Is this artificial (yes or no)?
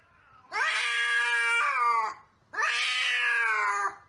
no